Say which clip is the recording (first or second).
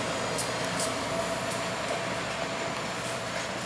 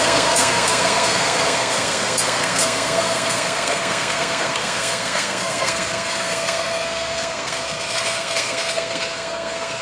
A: first